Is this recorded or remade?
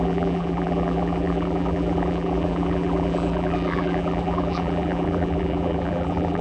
remade